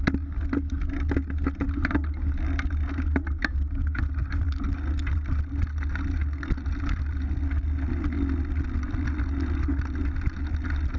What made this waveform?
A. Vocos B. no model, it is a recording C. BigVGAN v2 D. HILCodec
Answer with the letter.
B